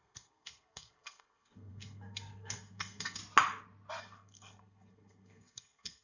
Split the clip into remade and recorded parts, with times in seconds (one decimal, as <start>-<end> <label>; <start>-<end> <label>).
0.0-3.2 remade; 3.2-4.0 recorded; 4.0-6.0 remade